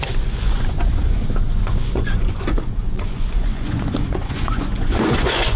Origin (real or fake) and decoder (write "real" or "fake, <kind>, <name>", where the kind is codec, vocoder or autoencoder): fake, vocoder, Vocos